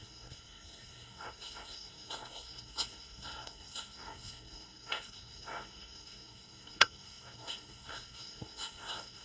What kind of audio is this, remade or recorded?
remade